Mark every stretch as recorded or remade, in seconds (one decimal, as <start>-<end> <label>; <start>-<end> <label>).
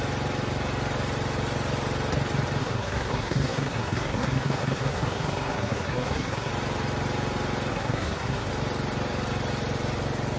0.0-2.6 recorded; 2.6-6.5 remade; 6.5-7.7 recorded; 7.7-8.5 remade; 8.5-10.4 recorded